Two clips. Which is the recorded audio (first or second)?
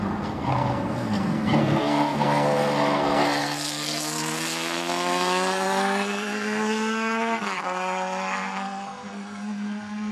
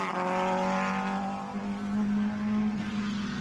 second